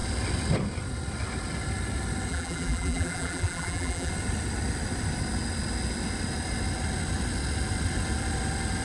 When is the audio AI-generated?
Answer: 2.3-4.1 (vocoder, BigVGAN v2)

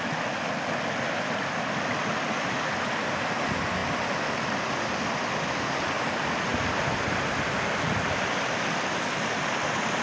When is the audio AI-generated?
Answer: none

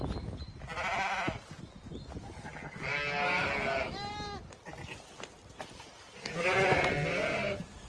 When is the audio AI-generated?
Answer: none

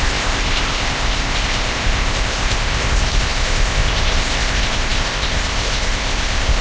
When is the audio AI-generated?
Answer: 0.0-6.6 (codec, ZipCodec)

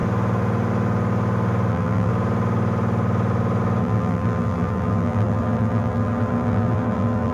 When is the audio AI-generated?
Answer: 1.7-2.1 (vocoder, BigVGAN v2); 3.8-7.3

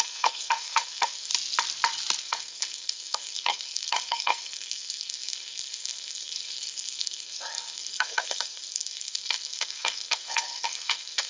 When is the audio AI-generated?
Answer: 0.0-1.3 (codec, SNAC); 2.2-11.3